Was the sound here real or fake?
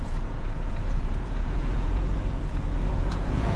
fake